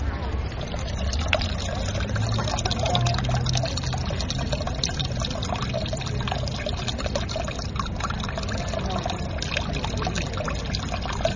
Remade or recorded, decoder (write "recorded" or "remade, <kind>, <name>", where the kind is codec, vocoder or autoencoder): recorded